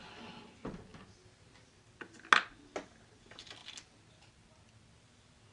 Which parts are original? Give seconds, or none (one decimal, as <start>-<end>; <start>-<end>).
0.0-5.5